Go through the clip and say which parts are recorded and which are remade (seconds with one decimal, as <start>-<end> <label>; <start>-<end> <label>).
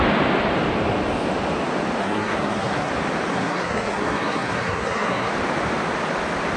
0.0-2.0 recorded; 2.0-2.9 remade; 2.9-3.3 recorded; 3.3-5.3 remade; 5.3-6.6 recorded